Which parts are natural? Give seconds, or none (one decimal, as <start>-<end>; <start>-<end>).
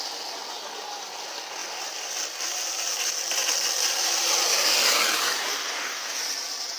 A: 0.0-5.5; 6.2-6.8